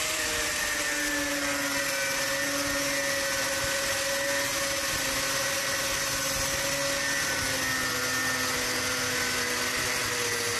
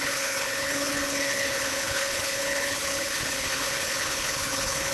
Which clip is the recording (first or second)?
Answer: first